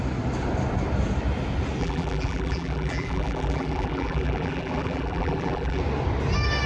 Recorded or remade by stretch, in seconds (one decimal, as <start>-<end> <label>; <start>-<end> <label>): 0.0-1.8 recorded; 1.8-5.8 remade; 5.8-6.7 recorded